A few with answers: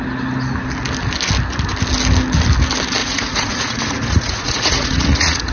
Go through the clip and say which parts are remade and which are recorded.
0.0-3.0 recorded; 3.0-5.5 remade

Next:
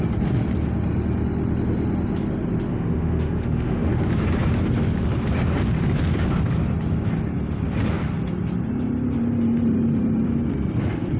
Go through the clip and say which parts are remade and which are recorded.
0.0-2.7 recorded; 2.7-3.9 remade; 3.9-11.2 recorded

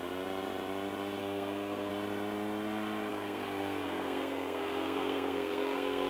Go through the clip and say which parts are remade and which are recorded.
0.0-1.2 recorded; 1.2-1.9 remade; 1.9-3.1 recorded; 3.1-6.1 remade

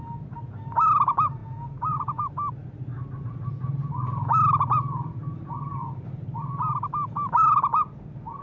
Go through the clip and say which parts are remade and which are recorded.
0.0-1.4 recorded; 1.4-2.2 remade; 2.2-8.4 recorded

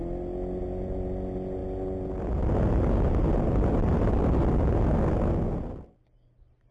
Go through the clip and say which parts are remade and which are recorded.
0.0-6.7 recorded

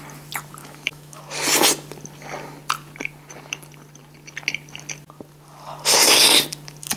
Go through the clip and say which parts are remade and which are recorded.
0.0-0.6 recorded; 0.6-1.2 remade; 1.2-7.0 recorded

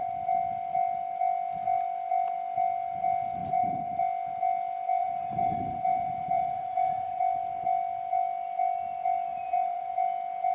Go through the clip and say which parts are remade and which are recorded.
0.0-3.4 recorded; 3.4-4.0 remade; 4.0-5.0 recorded; 5.0-7.2 remade; 7.2-9.3 recorded; 9.3-9.9 remade; 9.9-10.5 recorded